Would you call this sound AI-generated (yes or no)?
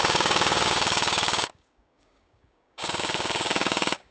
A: yes